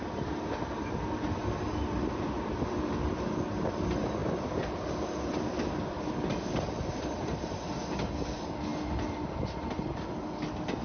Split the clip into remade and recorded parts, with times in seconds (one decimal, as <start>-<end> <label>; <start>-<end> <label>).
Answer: 0.0-10.8 recorded

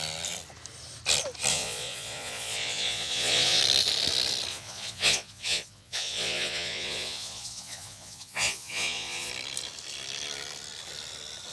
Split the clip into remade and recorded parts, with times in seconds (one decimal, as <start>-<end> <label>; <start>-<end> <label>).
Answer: 0.0-1.5 recorded; 1.5-3.6 remade; 3.6-4.5 recorded; 4.5-9.3 remade; 9.3-11.5 recorded

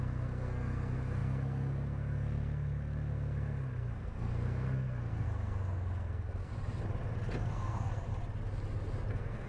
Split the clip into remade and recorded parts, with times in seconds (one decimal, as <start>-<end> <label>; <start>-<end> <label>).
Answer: 0.0-6.5 remade; 6.5-7.4 recorded; 7.4-8.1 remade; 8.1-9.1 recorded; 9.1-9.5 remade